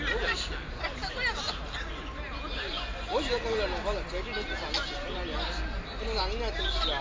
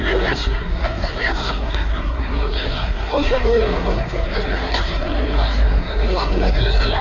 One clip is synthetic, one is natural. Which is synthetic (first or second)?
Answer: second